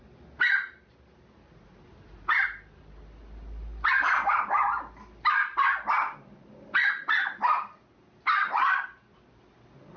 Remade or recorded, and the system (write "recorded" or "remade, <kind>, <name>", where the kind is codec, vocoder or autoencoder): recorded